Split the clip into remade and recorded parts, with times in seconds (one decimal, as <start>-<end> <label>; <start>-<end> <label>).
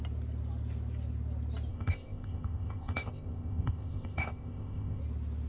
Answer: 0.0-1.7 recorded; 1.7-5.0 remade; 5.0-5.5 recorded